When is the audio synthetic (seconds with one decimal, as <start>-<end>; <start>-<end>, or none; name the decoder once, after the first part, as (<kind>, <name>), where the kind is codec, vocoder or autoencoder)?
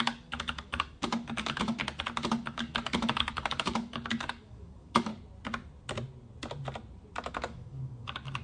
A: 0.0-1.8 (codec, DAC); 2.3-5.1; 7.3-8.4